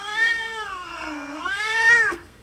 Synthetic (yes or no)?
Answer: yes